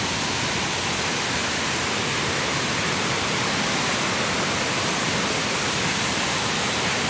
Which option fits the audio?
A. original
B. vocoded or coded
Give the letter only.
A